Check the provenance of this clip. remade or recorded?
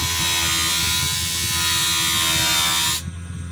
recorded